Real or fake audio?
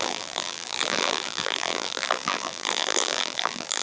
fake